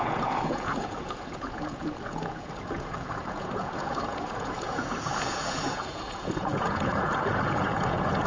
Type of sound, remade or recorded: remade